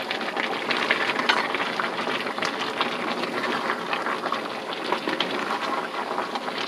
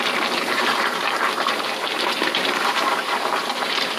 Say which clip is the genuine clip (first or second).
first